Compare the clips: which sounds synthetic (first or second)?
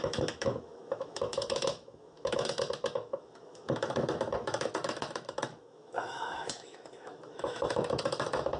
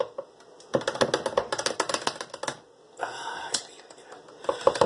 first